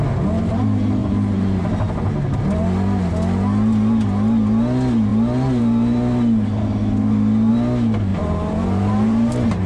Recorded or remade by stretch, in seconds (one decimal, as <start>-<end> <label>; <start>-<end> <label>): 0.0-1.0 recorded; 1.0-1.6 remade; 1.6-8.1 recorded; 8.1-9.7 remade